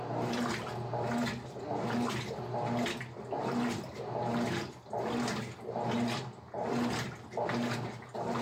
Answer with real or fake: real